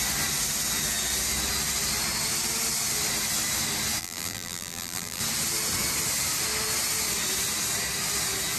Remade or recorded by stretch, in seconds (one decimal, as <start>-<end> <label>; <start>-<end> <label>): 0.0-4.0 recorded; 4.0-5.2 remade; 5.2-8.6 recorded